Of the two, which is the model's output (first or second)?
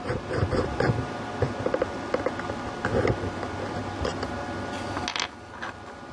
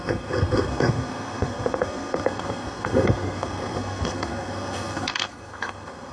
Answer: second